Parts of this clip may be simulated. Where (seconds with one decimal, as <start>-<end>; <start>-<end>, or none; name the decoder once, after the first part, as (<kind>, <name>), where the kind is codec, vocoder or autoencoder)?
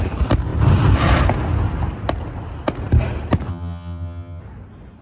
3.5-4.4 (vocoder, HiFi-GAN)